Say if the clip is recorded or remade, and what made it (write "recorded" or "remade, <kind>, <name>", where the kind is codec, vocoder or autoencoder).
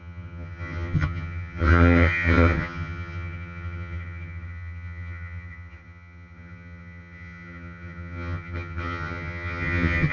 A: remade, vocoder, HiFi-GAN